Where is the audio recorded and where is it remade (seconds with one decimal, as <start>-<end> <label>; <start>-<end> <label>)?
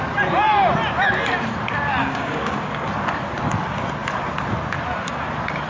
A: 0.0-2.0 recorded; 2.0-2.9 remade; 2.9-5.7 recorded